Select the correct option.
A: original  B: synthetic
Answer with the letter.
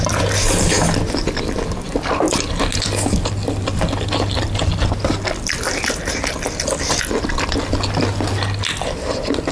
A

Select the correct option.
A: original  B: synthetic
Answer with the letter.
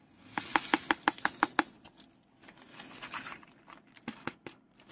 A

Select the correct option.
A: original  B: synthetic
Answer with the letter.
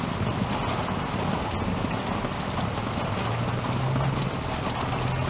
A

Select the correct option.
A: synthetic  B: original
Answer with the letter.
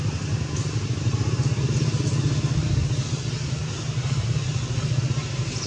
B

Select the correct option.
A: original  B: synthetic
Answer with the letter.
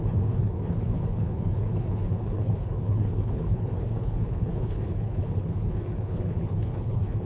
B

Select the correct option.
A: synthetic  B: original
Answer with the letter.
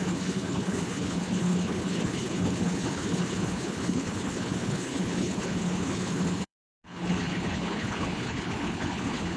A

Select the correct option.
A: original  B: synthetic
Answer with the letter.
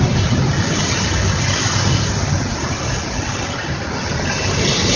A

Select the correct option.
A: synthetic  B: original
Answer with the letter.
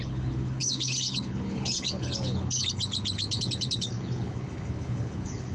A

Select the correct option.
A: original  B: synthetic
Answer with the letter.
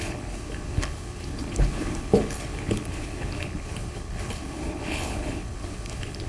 B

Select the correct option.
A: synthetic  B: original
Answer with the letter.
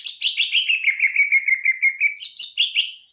B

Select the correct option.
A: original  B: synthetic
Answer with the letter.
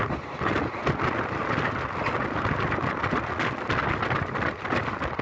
A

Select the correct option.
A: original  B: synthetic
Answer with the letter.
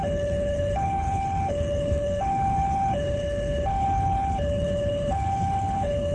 B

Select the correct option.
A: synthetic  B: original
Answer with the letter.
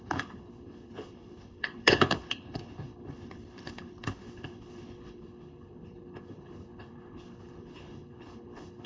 A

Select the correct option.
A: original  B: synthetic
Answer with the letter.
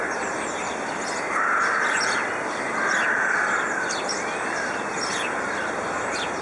A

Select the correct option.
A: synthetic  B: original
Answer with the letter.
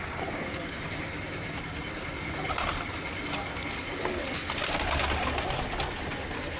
B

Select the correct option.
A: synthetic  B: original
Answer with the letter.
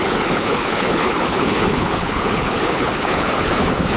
A